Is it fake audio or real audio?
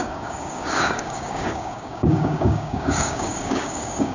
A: fake